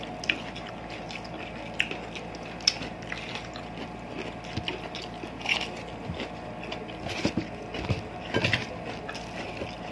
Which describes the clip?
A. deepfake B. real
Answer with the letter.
B